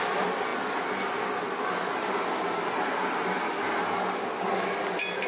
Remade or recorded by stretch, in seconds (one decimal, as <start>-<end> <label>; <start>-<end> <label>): 0.0-5.3 recorded